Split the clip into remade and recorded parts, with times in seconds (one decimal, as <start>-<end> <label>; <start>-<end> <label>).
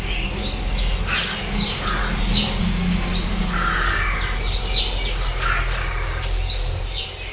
0.0-0.4 remade; 0.4-1.5 recorded; 1.5-2.0 remade; 2.0-2.6 recorded; 2.6-3.1 remade; 3.1-7.3 recorded